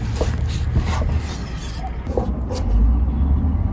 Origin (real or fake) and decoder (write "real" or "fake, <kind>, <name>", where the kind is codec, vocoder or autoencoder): real